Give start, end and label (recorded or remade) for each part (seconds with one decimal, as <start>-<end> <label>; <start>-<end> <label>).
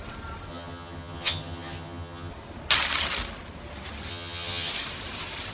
0.0-0.5 recorded; 0.5-2.3 remade; 2.3-4.1 recorded; 4.1-4.7 remade; 4.7-5.5 recorded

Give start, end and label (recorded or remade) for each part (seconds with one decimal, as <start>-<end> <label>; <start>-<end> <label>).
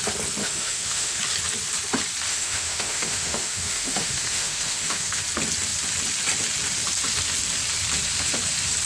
0.0-0.4 recorded; 0.4-1.2 remade; 1.2-2.3 recorded; 2.3-5.2 remade; 5.2-8.9 recorded